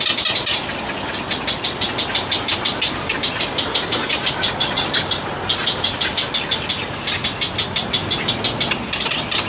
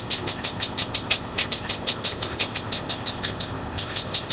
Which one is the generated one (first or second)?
second